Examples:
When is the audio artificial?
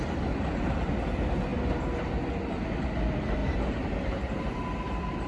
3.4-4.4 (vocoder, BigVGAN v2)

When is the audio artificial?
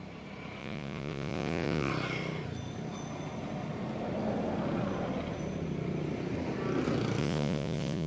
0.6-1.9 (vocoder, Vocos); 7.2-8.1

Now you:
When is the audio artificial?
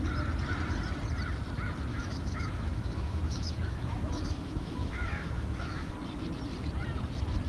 1.9-5.9 (autoencoder, DAC-VAE)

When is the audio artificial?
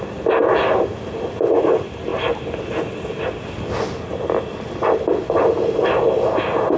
none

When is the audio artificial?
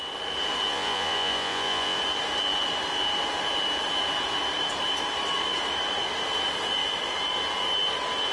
0.7-2.0 (vocoder, Vocos)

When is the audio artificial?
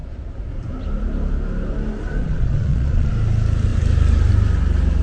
2.2-3.1 (vocoder, Vocos)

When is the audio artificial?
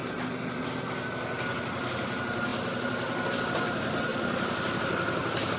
none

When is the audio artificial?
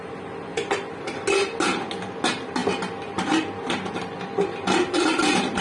none